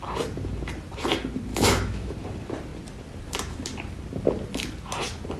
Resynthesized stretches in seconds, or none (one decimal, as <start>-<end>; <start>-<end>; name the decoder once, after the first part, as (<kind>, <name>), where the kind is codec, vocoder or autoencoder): 1.5-2.1 (autoencoder, DAC-VAE)